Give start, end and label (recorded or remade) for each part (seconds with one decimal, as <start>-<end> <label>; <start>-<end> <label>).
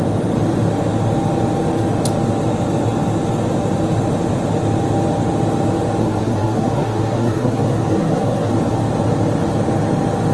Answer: 0.0-6.0 recorded; 6.0-8.5 remade; 8.5-10.3 recorded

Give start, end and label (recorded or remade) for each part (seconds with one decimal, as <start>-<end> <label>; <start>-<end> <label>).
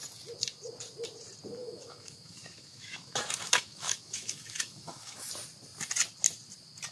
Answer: 0.0-1.6 recorded; 1.6-5.3 remade; 5.3-6.9 recorded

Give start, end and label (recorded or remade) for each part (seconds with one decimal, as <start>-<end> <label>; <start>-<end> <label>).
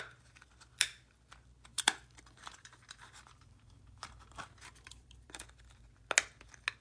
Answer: 0.0-1.7 recorded; 1.7-5.8 remade; 5.8-6.8 recorded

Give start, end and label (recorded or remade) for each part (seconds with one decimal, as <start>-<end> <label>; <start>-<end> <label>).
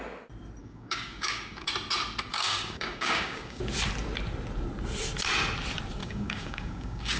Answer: 0.0-0.6 recorded; 0.6-1.7 remade; 1.7-2.3 recorded; 2.3-3.6 remade; 3.6-6.0 recorded; 6.0-7.2 remade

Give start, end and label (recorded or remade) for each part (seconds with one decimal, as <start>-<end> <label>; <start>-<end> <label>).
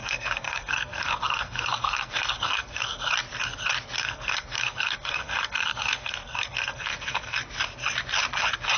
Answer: 0.0-3.1 remade; 3.1-4.0 recorded; 4.0-7.4 remade; 7.4-8.8 recorded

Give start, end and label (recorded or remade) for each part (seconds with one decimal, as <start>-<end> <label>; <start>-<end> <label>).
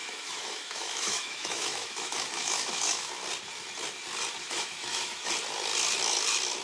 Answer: 0.0-3.1 remade; 3.1-4.4 recorded; 4.4-5.3 remade; 5.3-6.6 recorded